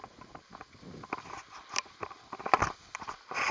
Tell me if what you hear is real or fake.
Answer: real